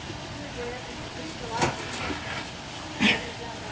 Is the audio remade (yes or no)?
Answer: no